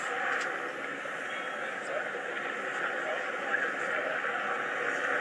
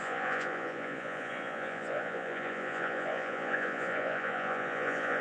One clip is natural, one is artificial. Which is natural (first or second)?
first